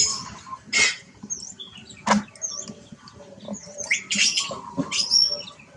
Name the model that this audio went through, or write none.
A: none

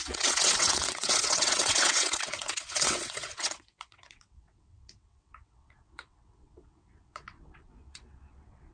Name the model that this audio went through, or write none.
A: vocoder, WaveNeXt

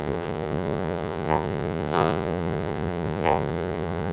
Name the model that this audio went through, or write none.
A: vocoder, Vocos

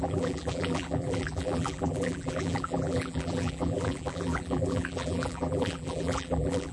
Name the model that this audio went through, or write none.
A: vocoder, BigVGAN v2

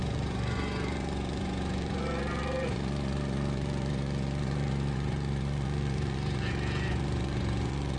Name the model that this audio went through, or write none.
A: vocoder, Vocos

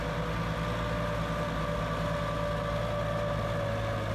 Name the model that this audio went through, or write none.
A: none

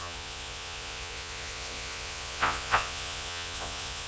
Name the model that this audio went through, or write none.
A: vocoder, Vocos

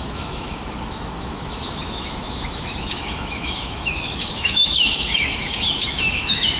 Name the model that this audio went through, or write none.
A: autoencoder, DAC-VAE